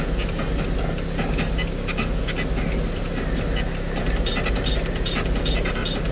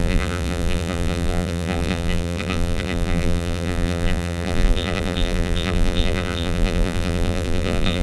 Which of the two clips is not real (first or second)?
second